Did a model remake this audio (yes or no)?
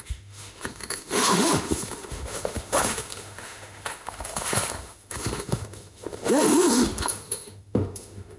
yes